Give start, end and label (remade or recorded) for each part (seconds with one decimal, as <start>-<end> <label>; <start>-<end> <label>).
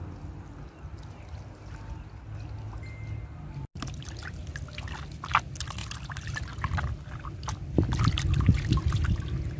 0.0-9.6 recorded